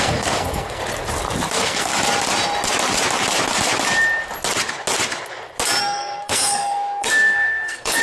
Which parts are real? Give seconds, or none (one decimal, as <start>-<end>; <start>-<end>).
0.8-1.5; 1.9-5.8

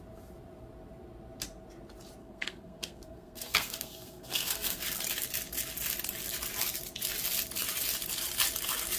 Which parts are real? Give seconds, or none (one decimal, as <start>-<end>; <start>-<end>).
0.0-2.2; 4.8-9.0

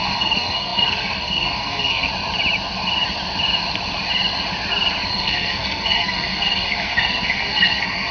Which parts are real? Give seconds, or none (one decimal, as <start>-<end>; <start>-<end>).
2.1-5.1

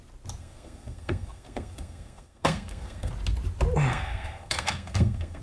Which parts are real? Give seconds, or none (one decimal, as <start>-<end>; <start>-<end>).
0.0-0.4; 3.1-3.9